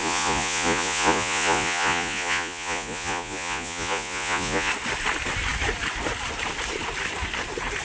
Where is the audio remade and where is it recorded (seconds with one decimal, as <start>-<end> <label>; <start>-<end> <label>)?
0.0-4.7 remade; 4.7-7.8 recorded